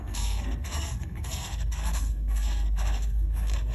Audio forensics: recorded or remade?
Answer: remade